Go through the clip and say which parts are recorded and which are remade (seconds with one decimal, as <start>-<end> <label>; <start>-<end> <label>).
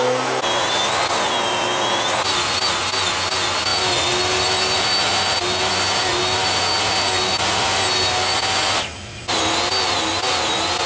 0.0-10.9 recorded